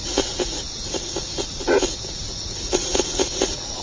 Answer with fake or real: fake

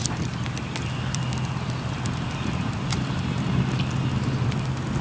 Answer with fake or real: real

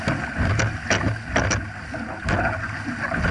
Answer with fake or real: real